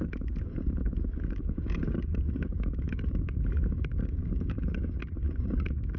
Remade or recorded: remade